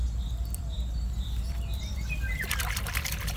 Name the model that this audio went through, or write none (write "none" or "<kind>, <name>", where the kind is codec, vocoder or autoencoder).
vocoder, BigVGAN v2